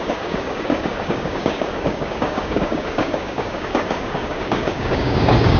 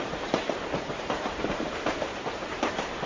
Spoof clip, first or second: first